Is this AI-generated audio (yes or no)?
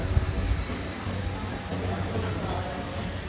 no